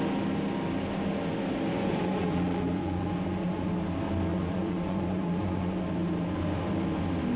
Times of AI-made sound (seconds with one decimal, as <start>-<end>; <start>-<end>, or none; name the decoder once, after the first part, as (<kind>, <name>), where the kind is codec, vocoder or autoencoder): 1.7-3.7 (vocoder, Vocos); 4.3-5.8